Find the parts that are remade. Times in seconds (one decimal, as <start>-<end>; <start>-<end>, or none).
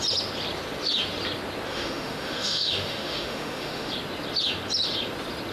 1.7-3.9